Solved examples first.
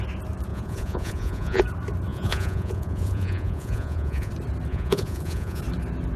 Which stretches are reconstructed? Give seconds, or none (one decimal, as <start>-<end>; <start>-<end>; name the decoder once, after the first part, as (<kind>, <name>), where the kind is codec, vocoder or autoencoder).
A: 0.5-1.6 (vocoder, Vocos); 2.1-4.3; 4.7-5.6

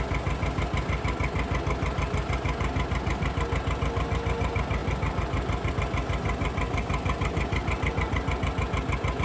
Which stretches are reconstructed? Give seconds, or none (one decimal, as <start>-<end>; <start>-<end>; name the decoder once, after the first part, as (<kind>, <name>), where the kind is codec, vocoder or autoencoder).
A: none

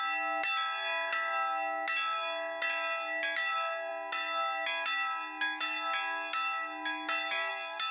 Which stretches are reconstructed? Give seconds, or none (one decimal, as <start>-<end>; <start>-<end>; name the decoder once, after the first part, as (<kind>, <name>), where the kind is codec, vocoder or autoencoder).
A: none

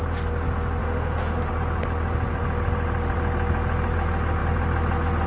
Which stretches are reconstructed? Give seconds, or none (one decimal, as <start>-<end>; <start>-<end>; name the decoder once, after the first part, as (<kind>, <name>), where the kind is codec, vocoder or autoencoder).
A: 0.8-1.5 (autoencoder, DAC-VAE)